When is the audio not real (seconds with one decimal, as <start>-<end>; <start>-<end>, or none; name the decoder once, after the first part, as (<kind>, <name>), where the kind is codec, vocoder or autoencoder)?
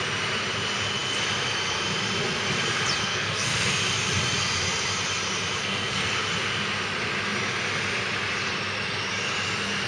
3.0-3.7 (codec, SNAC); 5.6-6.1